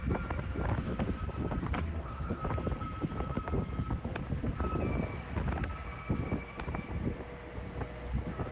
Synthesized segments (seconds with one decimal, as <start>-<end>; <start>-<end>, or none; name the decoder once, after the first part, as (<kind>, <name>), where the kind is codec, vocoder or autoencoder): 1.6-2.4 (codec, SNAC)